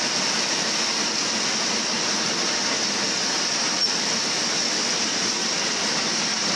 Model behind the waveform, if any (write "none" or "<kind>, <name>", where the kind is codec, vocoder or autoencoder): none